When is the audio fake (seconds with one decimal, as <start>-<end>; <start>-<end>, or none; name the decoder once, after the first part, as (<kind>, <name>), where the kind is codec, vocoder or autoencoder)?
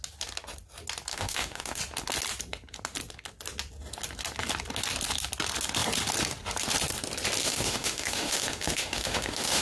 1.1-1.8 (autoencoder, DAC-VAE); 7.4-9.6